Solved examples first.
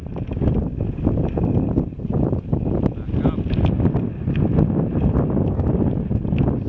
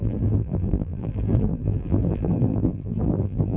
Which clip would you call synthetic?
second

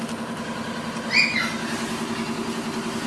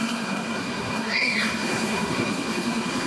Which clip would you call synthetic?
second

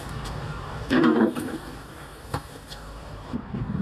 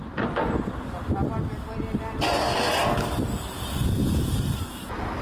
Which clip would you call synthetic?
first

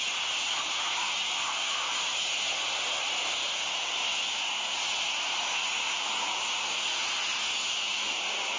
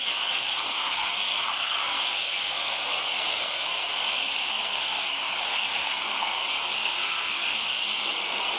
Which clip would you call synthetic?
second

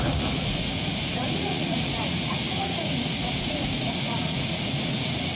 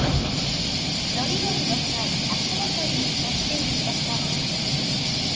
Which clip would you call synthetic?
first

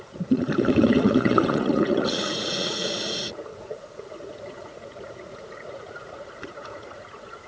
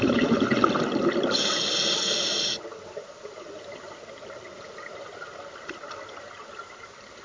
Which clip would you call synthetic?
first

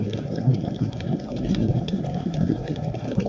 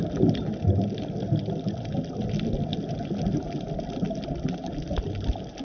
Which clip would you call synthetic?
first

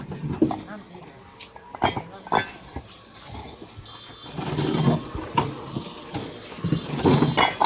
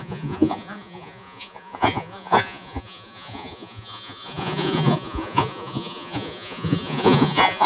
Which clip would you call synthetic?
second